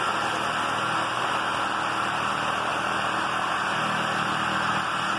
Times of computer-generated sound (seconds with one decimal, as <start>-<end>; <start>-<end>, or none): none